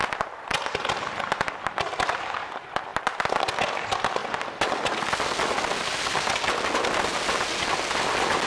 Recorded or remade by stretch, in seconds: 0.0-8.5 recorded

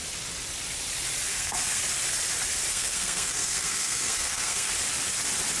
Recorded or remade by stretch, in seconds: 0.0-1.3 recorded; 1.3-1.8 remade; 1.8-2.7 recorded; 2.7-4.7 remade; 4.7-5.6 recorded